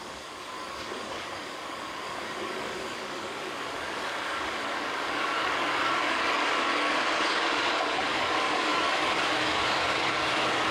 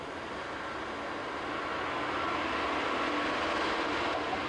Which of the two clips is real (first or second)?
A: second